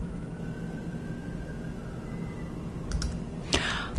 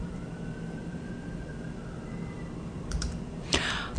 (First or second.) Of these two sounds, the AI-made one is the second